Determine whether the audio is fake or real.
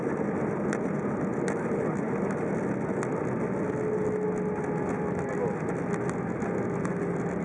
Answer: real